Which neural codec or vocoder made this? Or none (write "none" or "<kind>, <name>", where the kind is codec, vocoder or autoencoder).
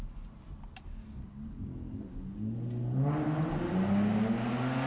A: none